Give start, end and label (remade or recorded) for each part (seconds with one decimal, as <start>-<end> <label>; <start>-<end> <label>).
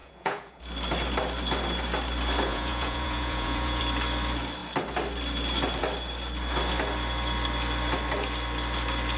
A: 0.0-0.6 remade; 0.6-2.5 recorded; 2.5-3.8 remade; 3.8-9.2 recorded